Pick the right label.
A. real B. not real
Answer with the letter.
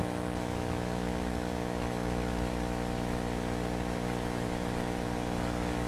B